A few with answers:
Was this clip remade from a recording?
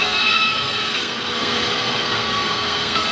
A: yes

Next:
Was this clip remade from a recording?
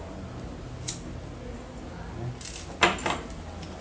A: no